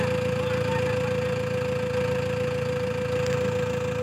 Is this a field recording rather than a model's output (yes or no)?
yes